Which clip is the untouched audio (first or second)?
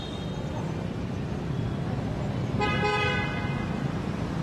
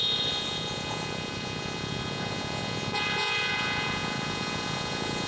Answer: first